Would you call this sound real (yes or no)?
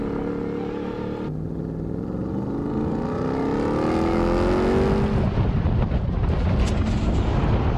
yes